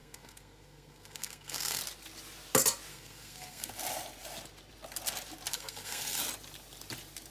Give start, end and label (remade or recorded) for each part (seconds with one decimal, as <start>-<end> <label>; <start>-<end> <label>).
0.0-1.8 remade; 1.8-2.9 recorded; 2.9-3.7 remade; 3.7-5.5 recorded; 5.5-6.2 remade; 6.2-7.3 recorded